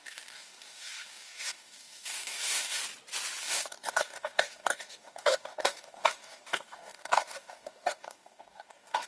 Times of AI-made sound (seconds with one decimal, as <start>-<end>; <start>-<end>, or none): 0.0-2.8; 3.4-9.1